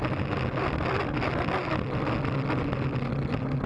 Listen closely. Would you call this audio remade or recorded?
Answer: recorded